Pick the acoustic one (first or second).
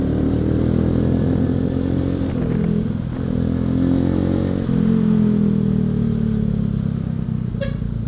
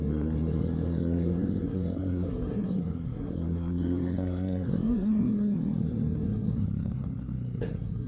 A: first